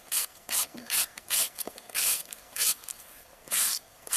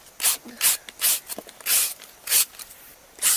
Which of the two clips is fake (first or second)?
first